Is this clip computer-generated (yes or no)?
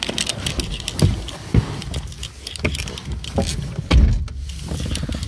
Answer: no